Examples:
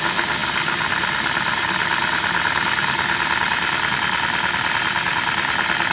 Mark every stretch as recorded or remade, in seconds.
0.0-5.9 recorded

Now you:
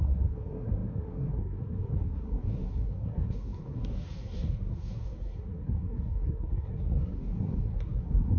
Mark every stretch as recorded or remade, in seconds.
0.0-8.4 remade

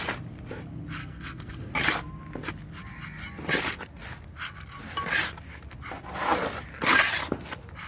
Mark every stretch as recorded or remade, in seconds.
0.0-1.0 recorded; 1.0-1.7 remade; 1.7-7.9 recorded